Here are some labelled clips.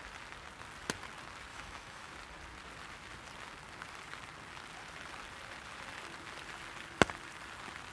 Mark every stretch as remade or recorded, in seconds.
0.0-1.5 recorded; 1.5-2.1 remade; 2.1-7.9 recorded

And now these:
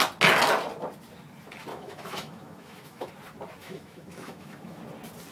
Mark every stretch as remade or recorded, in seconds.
0.0-1.7 recorded; 1.7-3.1 remade; 3.1-3.6 recorded; 3.6-4.8 remade; 4.8-5.3 recorded

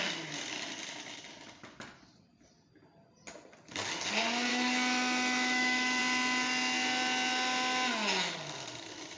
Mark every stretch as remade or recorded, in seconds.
0.0-4.5 recorded; 4.5-6.0 remade; 6.0-9.2 recorded